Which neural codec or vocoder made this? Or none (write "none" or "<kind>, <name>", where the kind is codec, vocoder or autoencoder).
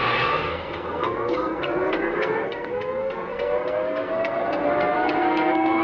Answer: codec, SNAC